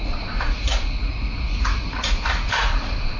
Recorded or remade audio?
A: remade